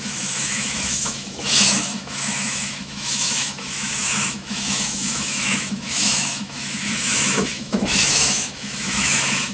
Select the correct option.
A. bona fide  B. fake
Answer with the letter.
B